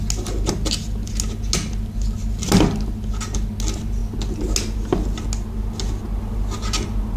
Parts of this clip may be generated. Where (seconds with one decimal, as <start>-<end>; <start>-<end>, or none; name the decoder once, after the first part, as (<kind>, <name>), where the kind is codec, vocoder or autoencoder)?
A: none